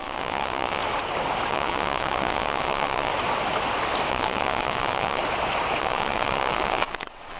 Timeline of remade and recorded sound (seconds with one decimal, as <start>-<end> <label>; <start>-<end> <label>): 0.0-0.8 remade; 0.8-1.5 recorded; 1.5-3.1 remade; 3.1-4.1 recorded; 4.1-5.2 remade; 5.2-5.8 recorded; 5.8-7.4 remade